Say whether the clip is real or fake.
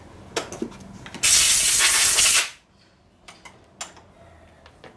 real